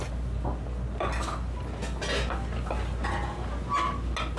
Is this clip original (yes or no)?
yes